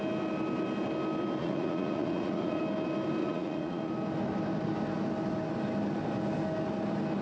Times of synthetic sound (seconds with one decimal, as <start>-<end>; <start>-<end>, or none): 1.4-2.6; 3.2-3.9